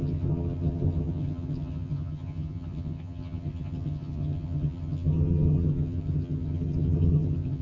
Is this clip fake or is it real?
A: fake